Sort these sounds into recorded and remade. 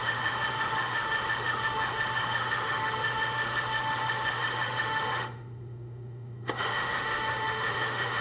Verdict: remade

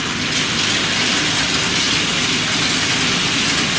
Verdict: recorded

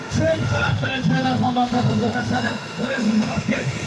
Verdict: remade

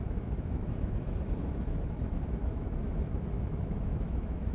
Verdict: remade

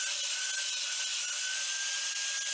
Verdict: recorded